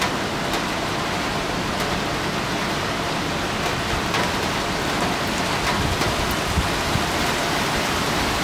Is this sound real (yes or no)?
yes